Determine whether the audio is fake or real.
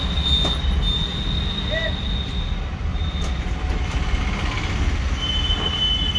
real